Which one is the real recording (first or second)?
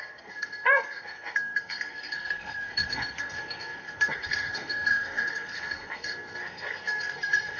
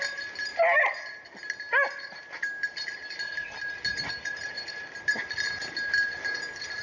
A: second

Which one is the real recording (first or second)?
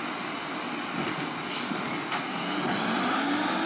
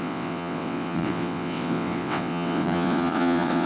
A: first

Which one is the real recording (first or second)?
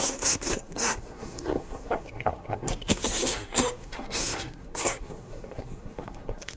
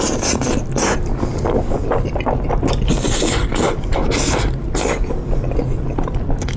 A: second